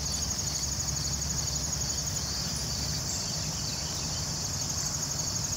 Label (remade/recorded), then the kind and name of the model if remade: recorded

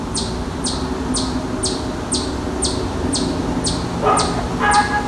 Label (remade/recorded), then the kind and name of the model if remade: recorded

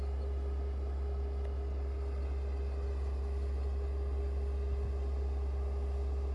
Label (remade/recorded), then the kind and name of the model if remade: recorded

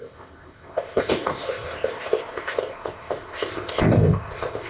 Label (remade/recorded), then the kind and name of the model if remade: remade, codec, ZipCodec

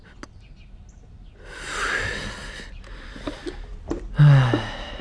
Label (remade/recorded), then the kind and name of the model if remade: recorded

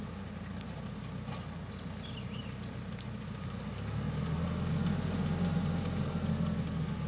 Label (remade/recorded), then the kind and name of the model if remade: recorded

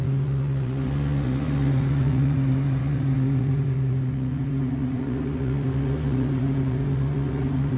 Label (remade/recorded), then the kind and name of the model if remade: remade, vocoder, Vocos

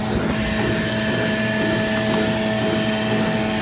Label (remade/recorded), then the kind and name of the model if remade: recorded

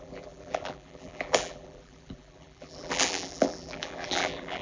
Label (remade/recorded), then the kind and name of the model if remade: remade, vocoder, BigVGAN v2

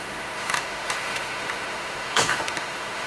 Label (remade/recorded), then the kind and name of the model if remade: remade, autoencoder, DAC-VAE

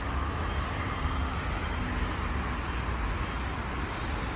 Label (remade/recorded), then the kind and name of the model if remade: recorded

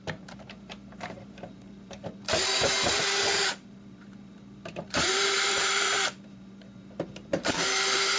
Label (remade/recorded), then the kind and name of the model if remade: remade, vocoder, BigVGAN v2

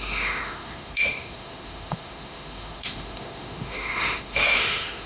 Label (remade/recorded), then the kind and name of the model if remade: remade, autoencoder, DAC-VAE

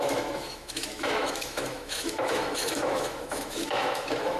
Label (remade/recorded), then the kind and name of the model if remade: remade, autoencoder, DAC-VAE